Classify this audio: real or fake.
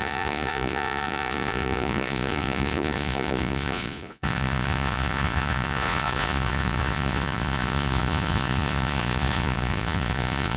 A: fake